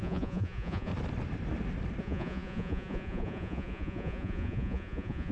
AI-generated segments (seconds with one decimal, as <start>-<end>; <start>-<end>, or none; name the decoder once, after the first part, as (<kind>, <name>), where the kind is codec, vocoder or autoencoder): 0.0-0.9 (vocoder, Vocos); 2.0-5.3